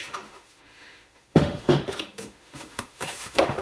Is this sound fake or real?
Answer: fake